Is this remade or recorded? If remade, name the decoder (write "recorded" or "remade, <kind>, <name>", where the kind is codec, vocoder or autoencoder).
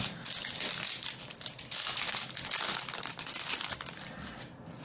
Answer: recorded